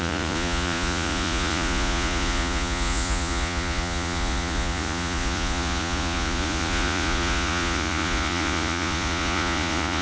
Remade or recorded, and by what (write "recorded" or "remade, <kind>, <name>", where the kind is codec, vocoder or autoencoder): remade, vocoder, Vocos